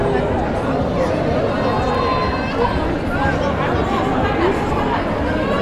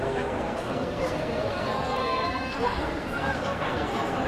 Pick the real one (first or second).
first